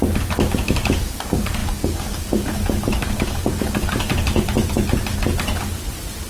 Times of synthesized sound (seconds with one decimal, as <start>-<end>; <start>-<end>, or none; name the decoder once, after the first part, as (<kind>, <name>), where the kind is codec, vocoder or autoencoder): 0.9-4.1 (codec, DAC)